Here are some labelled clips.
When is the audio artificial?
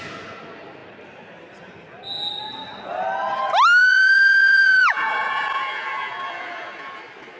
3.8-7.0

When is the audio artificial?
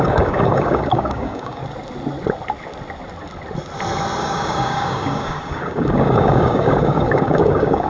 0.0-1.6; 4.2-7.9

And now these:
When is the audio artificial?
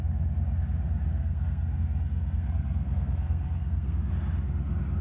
1.1-4.1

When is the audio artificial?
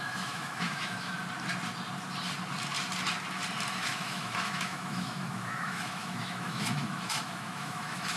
0.0-1.1; 3.7-8.2